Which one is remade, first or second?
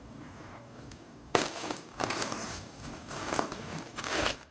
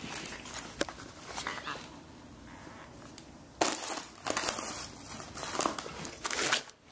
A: first